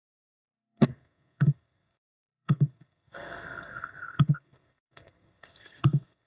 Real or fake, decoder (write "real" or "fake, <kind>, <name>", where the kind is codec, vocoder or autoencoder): fake, codec, SNAC